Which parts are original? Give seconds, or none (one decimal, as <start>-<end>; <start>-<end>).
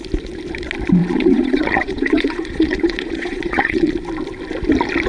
0.0-1.0; 3.9-5.1